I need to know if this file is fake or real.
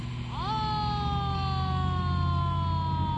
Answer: real